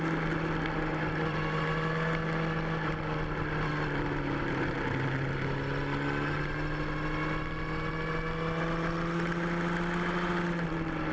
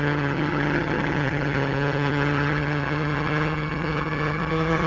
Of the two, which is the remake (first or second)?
second